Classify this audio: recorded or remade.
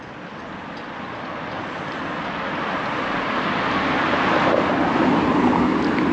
recorded